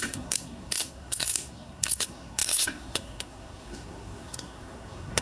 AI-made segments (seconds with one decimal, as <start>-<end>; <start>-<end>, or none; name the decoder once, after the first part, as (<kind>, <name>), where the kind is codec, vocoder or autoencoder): 0.0-5.2 (codec, SNAC)